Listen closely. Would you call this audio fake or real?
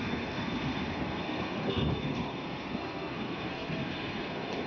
fake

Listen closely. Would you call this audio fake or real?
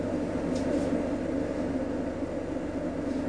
real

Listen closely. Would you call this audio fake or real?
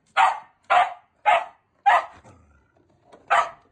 real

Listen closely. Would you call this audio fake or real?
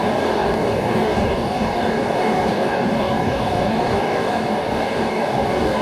fake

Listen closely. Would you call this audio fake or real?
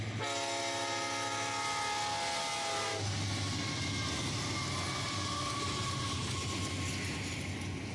real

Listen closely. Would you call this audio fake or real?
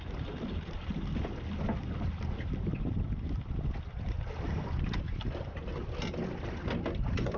real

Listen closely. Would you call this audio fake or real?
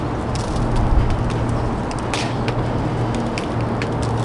real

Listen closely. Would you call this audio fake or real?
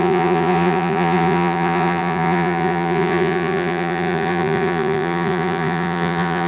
fake